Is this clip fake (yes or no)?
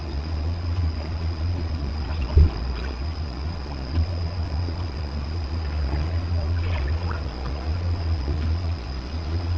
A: yes